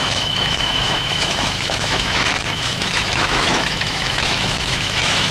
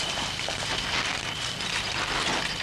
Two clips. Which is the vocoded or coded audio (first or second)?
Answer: first